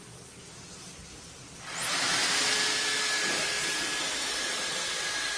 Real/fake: real